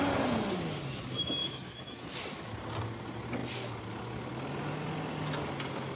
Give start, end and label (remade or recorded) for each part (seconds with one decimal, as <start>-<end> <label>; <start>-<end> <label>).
0.0-1.4 recorded; 1.4-2.2 remade; 2.2-6.0 recorded